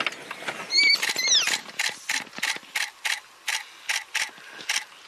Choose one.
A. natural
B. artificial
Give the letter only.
A